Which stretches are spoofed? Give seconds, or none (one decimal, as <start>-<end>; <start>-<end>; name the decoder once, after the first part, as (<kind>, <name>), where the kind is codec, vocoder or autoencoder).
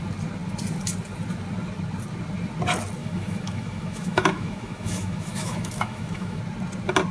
3.0-6.4 (autoencoder, DAC-VAE)